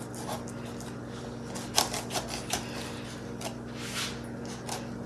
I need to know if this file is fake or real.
real